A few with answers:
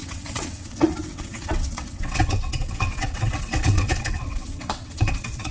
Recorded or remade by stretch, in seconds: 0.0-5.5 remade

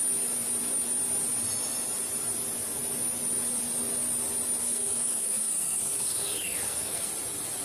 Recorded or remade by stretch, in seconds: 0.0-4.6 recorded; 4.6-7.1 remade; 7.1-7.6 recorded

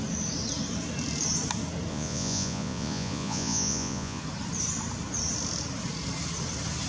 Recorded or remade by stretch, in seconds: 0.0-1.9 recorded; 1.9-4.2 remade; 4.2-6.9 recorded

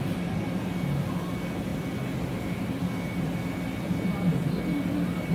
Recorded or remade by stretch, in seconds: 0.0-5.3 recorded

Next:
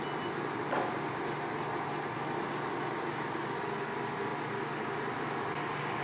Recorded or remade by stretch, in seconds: 0.0-6.0 recorded

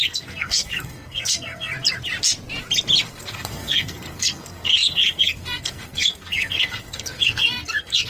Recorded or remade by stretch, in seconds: 0.0-1.7 remade; 1.7-3.0 recorded; 3.0-8.1 remade